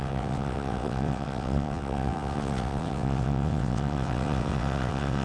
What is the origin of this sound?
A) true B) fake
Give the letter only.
B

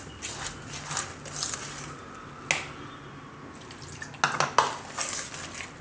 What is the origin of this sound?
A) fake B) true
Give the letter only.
B